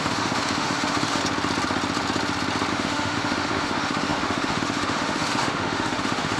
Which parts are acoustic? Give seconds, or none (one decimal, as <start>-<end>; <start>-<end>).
1.2-2.7